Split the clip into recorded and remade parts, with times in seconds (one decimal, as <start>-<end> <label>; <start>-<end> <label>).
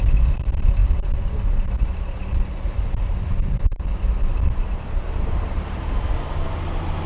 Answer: 0.0-7.1 recorded